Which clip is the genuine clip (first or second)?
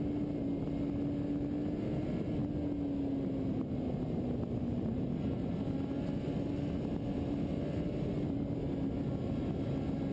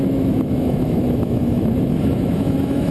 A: first